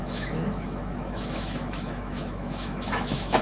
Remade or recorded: remade